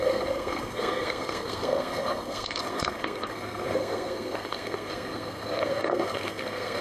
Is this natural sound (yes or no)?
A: no